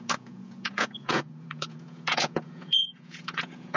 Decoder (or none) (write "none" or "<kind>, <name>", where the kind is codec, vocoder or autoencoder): vocoder, Vocos